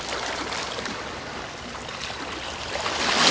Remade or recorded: recorded